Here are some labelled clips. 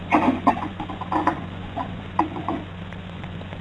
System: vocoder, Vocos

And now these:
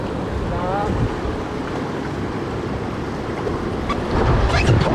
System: none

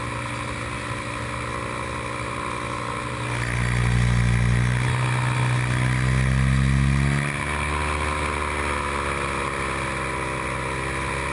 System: none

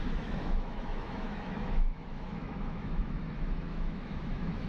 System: autoencoder, DAC-VAE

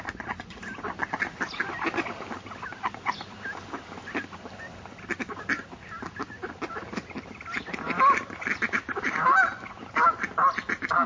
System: none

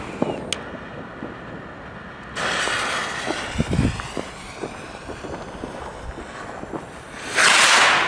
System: none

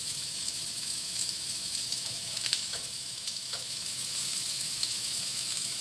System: autoencoder, DAC-VAE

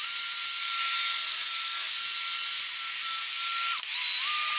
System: none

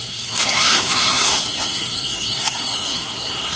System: codec, SNAC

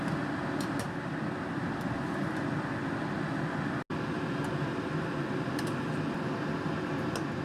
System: none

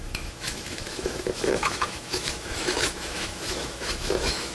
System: autoencoder, DAC-VAE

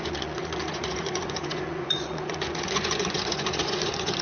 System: vocoder, Vocos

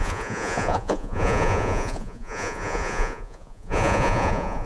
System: vocoder, Vocos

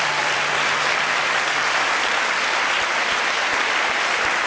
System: vocoder, BigVGAN v2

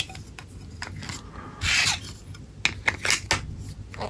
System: none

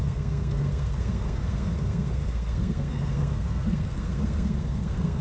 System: codec, SNAC